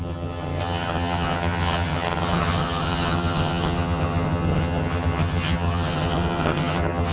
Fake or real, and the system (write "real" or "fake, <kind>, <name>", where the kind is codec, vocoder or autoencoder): fake, vocoder, HiFi-GAN